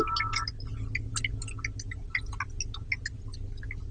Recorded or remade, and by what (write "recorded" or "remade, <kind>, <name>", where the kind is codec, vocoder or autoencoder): recorded